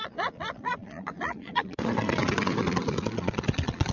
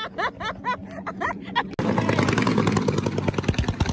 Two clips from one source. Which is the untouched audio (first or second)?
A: second